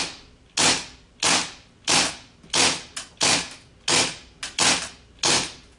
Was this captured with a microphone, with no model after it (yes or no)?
yes